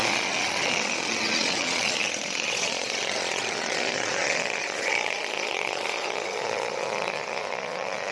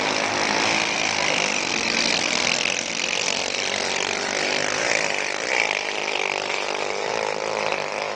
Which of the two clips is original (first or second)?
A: second